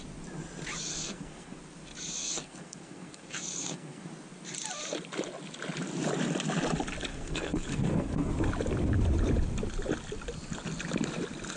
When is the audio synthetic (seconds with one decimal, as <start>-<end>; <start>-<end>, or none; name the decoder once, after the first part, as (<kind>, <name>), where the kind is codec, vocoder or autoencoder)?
0.9-1.6 (codec, SNAC); 2.2-4.1; 7.1-8.3

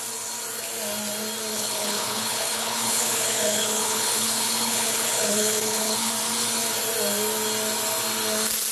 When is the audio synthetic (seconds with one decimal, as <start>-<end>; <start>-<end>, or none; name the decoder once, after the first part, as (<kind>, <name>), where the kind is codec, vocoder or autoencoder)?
1.5-6.1 (codec, HILCodec)

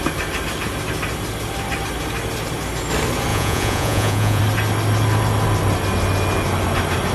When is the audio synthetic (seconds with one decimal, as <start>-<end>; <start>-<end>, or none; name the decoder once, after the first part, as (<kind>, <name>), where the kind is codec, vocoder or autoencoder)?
3.3-4.4 (vocoder, Vocos)

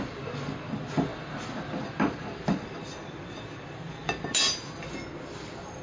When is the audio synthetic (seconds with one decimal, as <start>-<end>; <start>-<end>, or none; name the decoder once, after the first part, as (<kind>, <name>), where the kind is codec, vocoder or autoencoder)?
none